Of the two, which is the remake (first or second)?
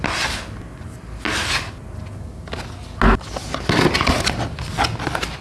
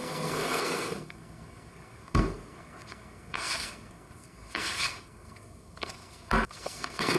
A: second